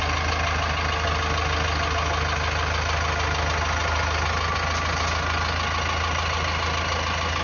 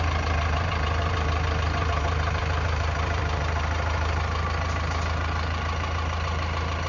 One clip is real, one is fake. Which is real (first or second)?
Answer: first